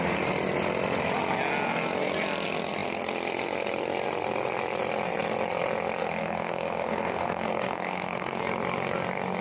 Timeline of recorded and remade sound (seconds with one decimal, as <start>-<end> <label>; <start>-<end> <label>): 0.0-6.0 recorded; 6.0-8.4 remade; 8.4-9.4 recorded